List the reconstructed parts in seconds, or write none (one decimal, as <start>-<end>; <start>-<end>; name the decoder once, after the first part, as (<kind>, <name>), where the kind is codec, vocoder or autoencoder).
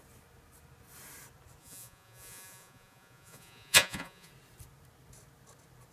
1.6-4.3 (vocoder, Vocos)